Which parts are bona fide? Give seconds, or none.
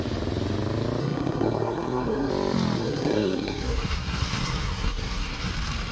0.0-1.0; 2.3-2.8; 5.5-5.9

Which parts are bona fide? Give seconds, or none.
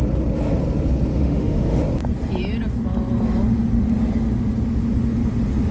0.0-1.1; 1.8-5.7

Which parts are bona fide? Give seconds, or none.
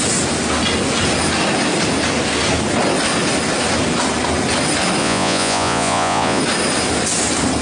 0.0-5.0; 6.4-7.6